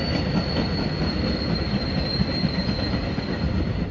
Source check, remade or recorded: recorded